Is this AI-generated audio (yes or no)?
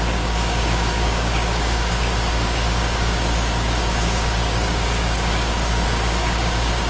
yes